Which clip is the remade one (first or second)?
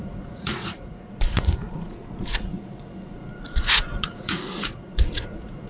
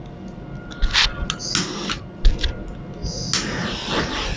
first